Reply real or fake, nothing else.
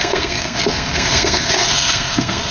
fake